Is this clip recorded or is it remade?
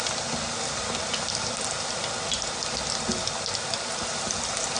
recorded